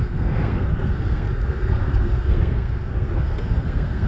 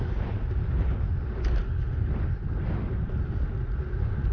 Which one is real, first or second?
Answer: second